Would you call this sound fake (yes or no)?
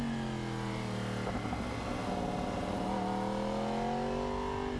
no